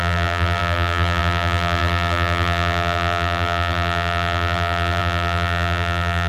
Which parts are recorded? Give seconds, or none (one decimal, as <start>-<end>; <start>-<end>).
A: none